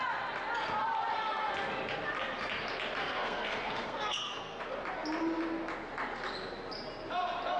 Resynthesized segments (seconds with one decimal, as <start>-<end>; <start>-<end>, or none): 3.0-4.6

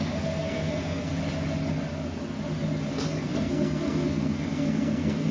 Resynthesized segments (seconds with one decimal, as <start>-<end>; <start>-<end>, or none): 0.0-1.1; 2.9-5.3

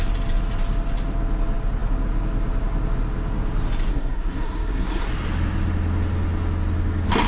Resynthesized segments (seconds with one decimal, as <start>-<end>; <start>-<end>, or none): 3.9-5.1

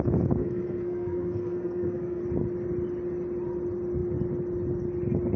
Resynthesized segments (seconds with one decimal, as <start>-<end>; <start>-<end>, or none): 0.4-2.2

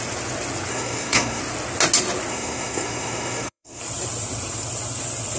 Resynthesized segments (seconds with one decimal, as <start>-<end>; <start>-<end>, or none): 0.7-1.4; 2.3-3.8